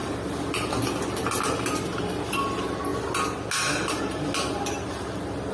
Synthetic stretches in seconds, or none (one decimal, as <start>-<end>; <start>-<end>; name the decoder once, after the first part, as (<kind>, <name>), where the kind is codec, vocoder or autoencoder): none